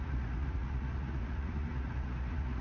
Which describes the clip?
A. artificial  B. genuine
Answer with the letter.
A